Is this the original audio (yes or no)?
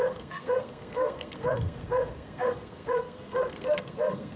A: no